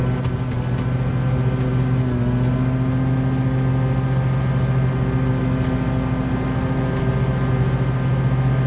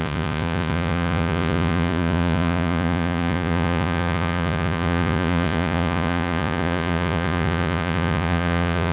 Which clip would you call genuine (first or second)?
first